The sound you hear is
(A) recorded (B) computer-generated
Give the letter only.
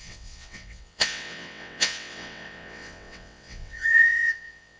B